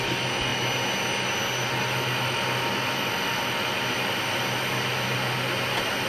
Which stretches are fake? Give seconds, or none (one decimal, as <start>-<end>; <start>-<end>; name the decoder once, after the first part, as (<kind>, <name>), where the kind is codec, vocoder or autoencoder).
none